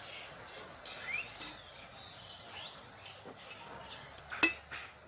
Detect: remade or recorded recorded